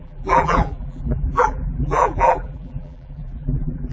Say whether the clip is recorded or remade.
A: remade